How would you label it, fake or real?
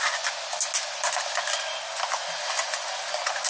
real